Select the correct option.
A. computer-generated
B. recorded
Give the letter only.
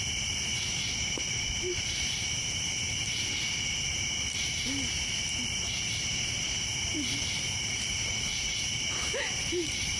A